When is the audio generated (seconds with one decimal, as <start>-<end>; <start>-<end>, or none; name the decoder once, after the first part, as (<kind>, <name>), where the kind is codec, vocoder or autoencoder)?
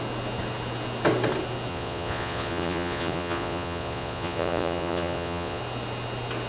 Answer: 1.7-5.6 (vocoder, Vocos)